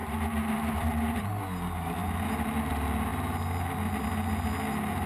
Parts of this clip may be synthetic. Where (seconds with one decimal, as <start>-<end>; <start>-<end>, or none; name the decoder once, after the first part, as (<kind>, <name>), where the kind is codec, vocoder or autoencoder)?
0.0-1.4 (vocoder, BigVGAN v2); 2.0-2.7